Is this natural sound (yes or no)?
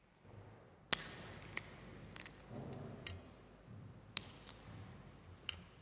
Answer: yes